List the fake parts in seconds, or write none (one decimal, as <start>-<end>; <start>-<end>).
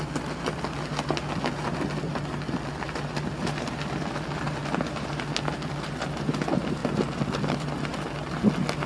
none